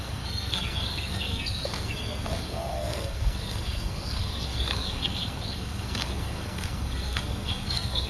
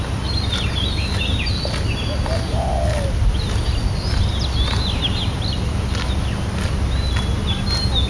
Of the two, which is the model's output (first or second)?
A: first